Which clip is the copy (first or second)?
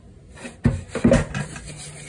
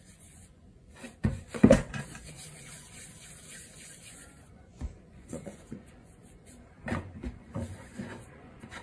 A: second